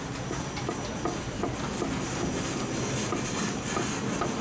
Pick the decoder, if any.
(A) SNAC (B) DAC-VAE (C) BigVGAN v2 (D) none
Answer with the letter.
D